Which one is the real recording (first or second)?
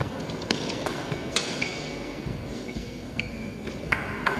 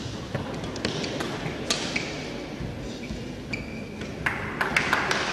second